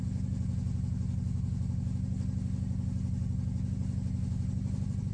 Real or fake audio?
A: real